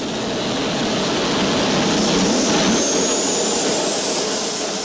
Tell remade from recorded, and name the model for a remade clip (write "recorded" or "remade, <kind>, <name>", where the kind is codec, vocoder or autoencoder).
recorded